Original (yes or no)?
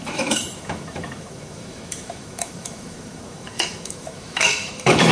no